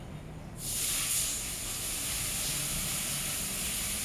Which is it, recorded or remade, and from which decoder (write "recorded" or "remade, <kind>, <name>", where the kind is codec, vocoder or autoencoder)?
recorded